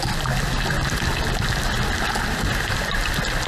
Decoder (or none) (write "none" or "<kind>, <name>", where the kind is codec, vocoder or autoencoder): none